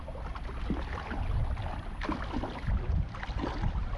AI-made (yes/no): no